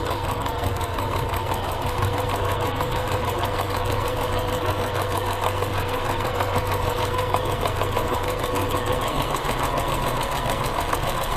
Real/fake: fake